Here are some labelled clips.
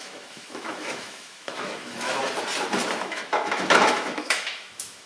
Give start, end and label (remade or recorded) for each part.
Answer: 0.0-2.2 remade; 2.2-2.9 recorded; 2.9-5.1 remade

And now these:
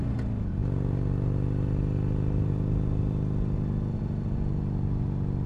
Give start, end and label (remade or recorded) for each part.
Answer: 0.0-5.5 recorded